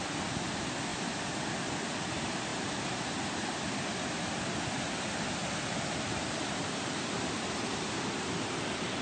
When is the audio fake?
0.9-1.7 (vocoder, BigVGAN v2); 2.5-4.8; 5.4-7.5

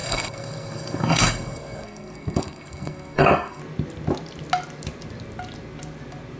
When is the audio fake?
0.0-3.6 (codec, SNAC)

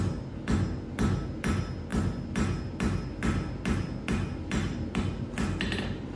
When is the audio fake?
none

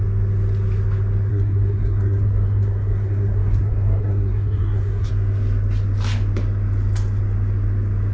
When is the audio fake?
1.3-5.1 (codec, SNAC)

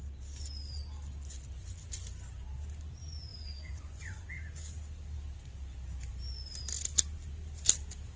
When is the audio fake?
3.3-4.3 (vocoder, Vocos)

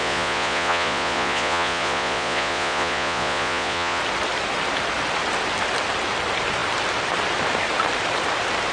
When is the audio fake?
0.0-4.0 (vocoder, Vocos)

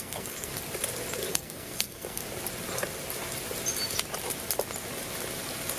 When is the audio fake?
0.0-0.5 (codec, SNAC); 1.3-2.2

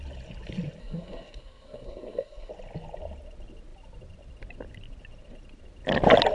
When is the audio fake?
0.8-2.5 (codec, SNAC)